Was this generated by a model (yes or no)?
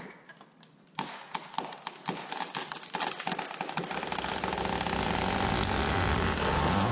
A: no